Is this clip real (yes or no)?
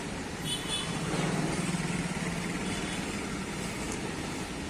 yes